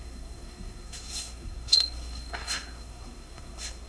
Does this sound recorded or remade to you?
remade